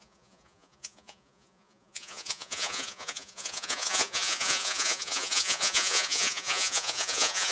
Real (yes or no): no